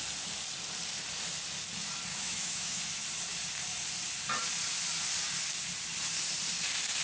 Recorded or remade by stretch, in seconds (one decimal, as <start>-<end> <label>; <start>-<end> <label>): 0.0-2.1 recorded; 2.1-2.8 remade; 2.8-7.0 recorded